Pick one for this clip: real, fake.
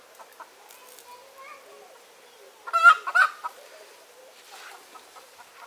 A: real